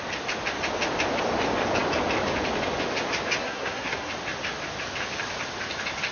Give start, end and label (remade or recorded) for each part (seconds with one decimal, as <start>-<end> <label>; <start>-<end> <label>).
0.0-3.4 recorded; 3.4-4.1 remade; 4.1-6.1 recorded